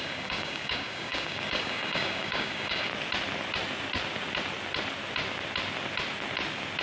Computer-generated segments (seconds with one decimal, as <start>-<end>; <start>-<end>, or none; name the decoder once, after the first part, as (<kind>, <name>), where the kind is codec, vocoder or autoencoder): 0.0-2.9 (codec, DAC)